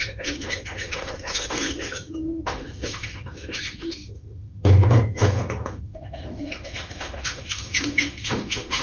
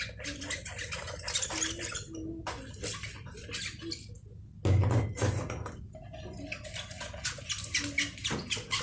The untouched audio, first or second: second